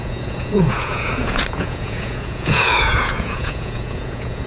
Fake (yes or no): yes